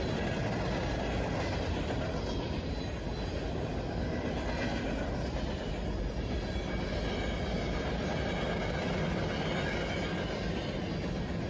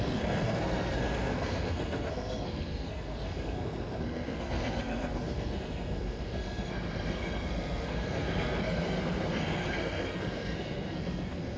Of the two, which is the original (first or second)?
first